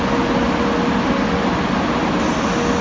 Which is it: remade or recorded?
recorded